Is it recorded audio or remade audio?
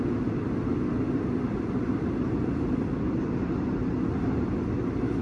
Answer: recorded